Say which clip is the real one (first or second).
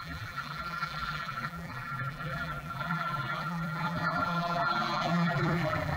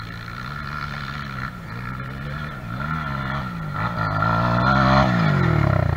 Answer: second